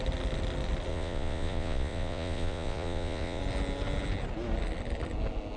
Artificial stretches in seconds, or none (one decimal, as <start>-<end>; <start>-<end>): 0.9-3.4